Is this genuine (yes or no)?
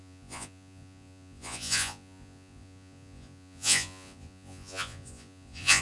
no